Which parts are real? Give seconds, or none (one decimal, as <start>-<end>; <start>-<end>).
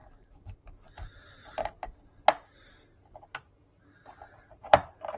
0.0-5.2